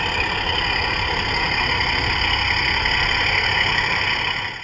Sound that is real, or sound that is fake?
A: real